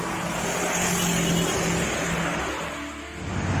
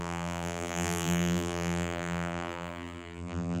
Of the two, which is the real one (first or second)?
first